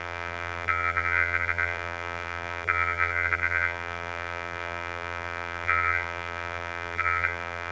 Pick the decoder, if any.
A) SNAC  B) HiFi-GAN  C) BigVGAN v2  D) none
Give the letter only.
C